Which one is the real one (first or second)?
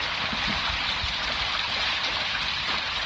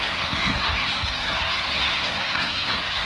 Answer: first